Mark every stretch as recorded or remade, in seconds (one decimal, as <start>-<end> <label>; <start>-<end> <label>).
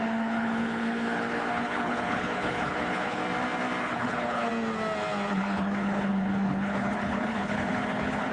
0.0-3.2 remade; 3.2-3.8 recorded; 3.8-4.5 remade; 4.5-5.3 recorded; 5.3-8.3 remade